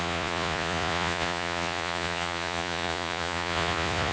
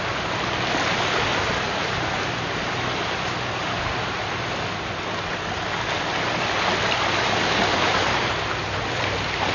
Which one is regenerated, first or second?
first